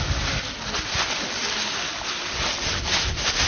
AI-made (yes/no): no